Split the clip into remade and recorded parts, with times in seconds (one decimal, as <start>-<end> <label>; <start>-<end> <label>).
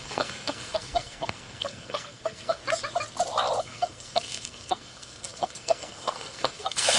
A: 0.0-2.6 remade; 2.6-3.6 recorded; 3.6-7.0 remade